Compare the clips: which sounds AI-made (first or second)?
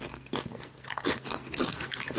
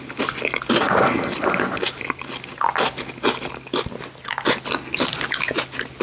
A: first